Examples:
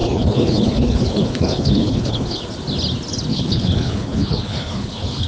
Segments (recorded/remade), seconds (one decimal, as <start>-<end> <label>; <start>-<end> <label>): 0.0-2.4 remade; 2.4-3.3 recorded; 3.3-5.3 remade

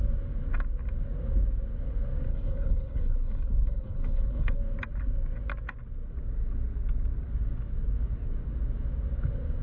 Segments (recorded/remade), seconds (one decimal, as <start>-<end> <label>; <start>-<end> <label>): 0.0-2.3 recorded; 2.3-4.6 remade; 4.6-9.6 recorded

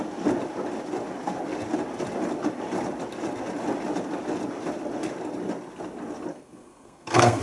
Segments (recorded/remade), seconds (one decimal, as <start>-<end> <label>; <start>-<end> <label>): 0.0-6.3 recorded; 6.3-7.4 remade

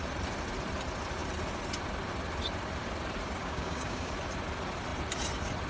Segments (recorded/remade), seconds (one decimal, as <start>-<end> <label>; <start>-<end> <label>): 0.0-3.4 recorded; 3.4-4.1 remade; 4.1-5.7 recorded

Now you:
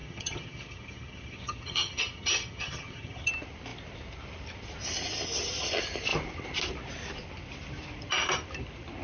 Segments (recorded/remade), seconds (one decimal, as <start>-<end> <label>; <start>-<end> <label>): 0.0-3.3 remade; 3.3-9.0 recorded